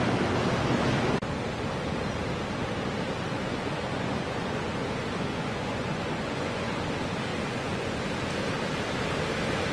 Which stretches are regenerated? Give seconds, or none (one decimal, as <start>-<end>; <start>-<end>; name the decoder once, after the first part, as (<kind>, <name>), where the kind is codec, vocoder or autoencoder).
3.3-6.8 (vocoder, Vocos); 7.3-8.1